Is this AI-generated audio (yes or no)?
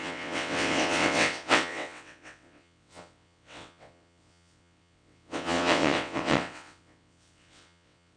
yes